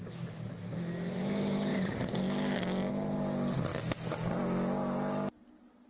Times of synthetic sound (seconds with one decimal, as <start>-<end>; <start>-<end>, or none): none